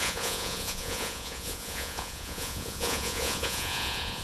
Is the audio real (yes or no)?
no